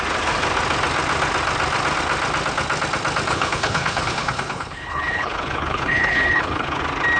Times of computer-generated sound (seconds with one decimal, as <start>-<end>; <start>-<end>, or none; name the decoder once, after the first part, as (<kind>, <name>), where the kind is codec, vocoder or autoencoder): 3.3-6.8 (codec, HILCodec)